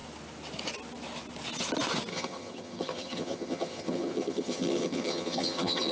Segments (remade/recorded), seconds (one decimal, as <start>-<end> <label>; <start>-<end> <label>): 0.0-2.1 recorded; 2.1-5.9 remade

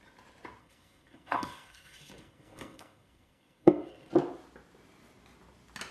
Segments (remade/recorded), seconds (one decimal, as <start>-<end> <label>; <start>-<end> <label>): 0.0-0.6 recorded; 0.6-4.1 remade; 4.1-5.9 recorded

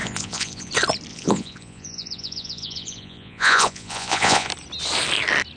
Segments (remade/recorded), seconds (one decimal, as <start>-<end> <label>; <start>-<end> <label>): 0.0-0.7 remade; 0.7-1.1 recorded; 1.1-4.5 remade; 4.5-5.6 recorded

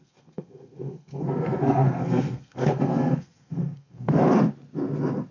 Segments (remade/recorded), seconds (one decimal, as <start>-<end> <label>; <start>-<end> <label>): 0.0-4.2 remade; 4.2-5.3 recorded

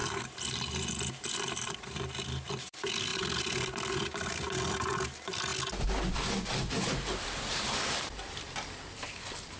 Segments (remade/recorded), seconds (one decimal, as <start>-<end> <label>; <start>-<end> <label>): 0.0-3.1 remade; 3.1-3.9 recorded; 3.9-5.5 remade; 5.5-6.1 recorded; 6.1-9.6 remade